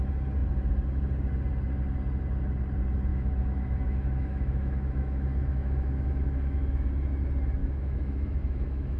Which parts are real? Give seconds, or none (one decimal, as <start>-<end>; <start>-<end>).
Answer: 0.0-3.1; 6.9-7.6